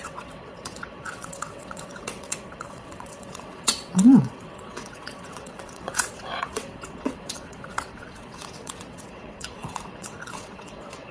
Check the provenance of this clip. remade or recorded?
remade